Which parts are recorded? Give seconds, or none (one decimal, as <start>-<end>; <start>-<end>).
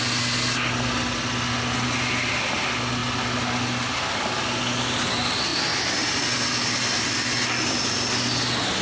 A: 0.0-8.8